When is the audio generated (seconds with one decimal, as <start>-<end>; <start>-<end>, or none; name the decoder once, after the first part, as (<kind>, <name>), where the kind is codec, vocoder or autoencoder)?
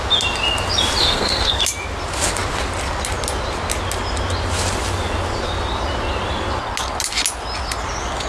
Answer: 1.0-1.6 (codec, SNAC)